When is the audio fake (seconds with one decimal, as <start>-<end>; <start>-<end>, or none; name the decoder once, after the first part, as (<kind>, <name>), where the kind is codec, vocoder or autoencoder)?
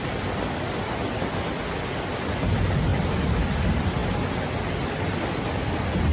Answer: none